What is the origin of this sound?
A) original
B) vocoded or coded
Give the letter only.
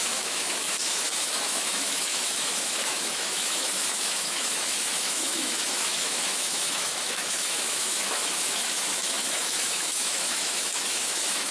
B